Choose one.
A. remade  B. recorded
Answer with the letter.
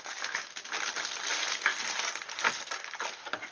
B